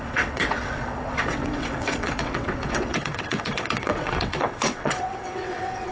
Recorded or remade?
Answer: remade